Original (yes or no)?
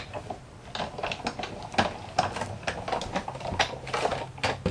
yes